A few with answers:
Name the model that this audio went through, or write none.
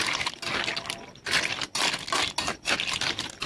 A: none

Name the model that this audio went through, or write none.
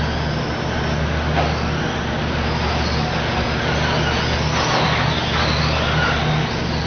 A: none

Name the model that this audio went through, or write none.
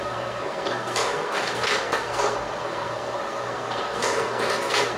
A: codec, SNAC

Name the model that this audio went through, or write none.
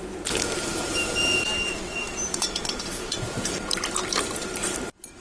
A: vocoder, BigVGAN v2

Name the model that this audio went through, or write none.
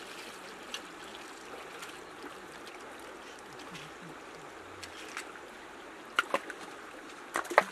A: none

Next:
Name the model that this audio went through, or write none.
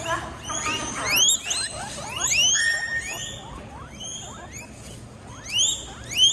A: none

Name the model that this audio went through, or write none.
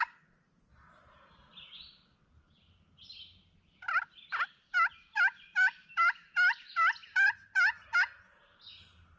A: none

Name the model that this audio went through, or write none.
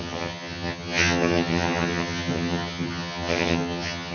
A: vocoder, HiFi-GAN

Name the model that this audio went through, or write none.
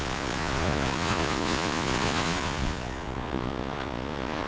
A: vocoder, Vocos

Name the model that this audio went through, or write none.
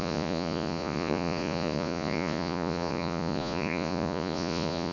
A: vocoder, Vocos